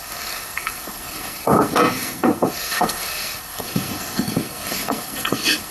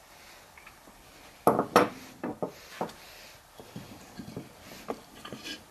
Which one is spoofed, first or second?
first